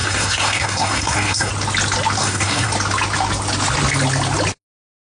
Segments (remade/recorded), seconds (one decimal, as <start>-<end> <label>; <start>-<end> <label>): 0.0-1.5 remade; 1.5-2.2 recorded; 2.2-2.7 remade; 2.7-5.1 recorded